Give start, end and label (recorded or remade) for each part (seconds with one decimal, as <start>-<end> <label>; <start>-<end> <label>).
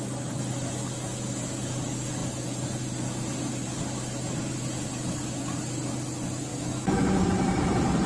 0.0-6.5 recorded; 6.5-7.2 remade; 7.2-8.1 recorded